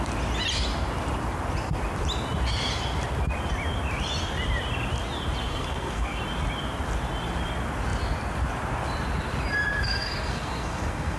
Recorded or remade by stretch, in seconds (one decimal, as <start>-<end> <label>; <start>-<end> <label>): 0.0-5.5 recorded; 5.5-6.2 remade; 6.2-9.7 recorded; 9.7-11.2 remade